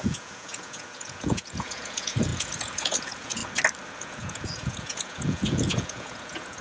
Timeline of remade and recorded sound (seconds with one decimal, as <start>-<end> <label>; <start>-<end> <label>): 0.0-3.4 remade; 3.4-4.0 recorded; 4.0-6.6 remade